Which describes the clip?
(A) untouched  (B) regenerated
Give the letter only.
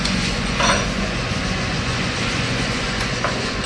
B